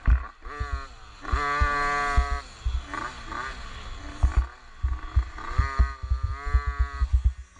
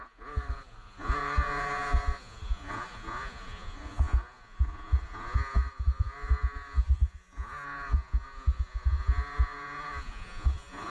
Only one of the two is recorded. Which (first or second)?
first